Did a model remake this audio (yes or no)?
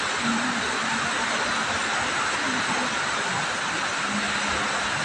no